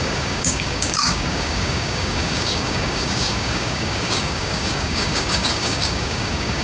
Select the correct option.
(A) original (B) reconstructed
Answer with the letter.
B